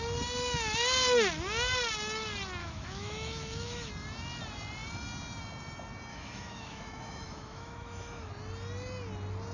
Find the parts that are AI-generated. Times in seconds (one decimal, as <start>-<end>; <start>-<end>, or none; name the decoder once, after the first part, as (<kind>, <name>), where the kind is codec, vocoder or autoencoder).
2.6-3.9 (autoencoder, DAC-VAE); 6.1-8.3